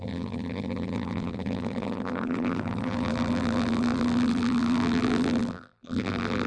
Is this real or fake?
fake